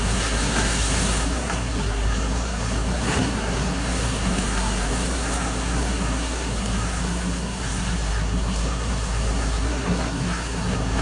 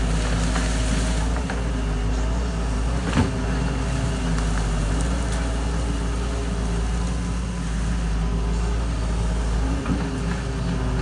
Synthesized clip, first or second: first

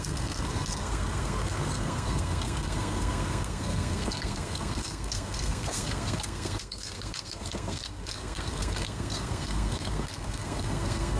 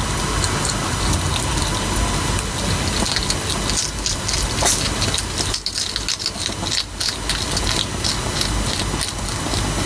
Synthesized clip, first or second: first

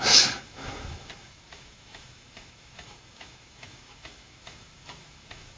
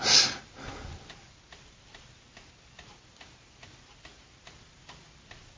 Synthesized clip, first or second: first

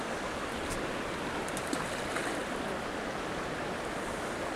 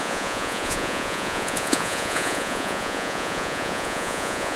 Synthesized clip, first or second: second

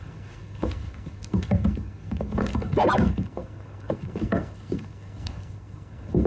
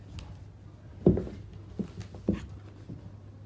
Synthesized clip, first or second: first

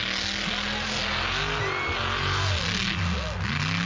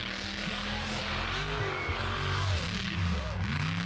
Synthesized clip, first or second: second